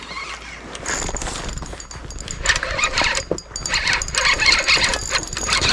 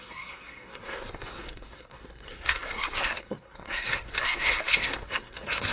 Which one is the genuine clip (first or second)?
first